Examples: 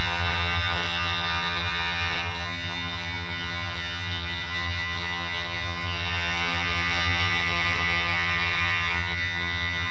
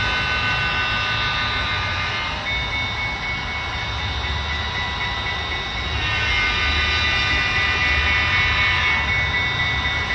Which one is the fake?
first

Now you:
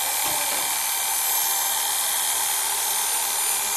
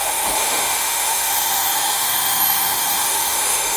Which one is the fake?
second